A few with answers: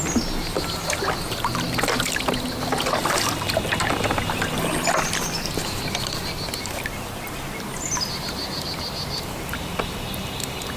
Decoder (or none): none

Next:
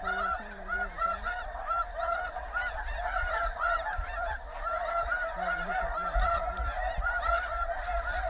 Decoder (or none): vocoder, BigVGAN v2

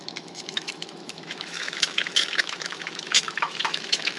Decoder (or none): autoencoder, DAC-VAE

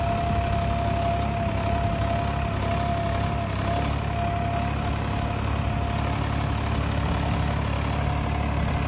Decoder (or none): none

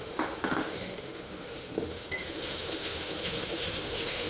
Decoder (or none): autoencoder, DAC-VAE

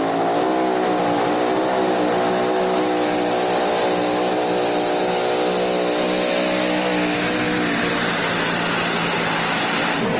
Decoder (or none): none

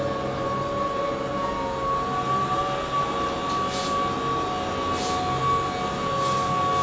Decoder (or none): none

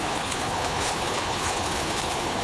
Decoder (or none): codec, HILCodec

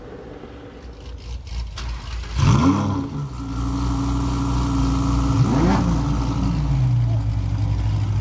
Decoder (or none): none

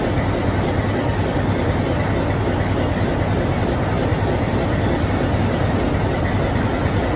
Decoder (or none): none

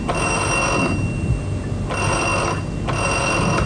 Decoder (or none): none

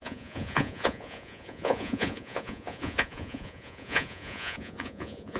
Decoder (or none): vocoder, Vocos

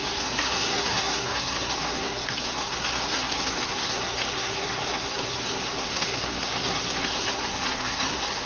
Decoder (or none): codec, SNAC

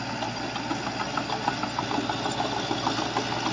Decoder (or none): none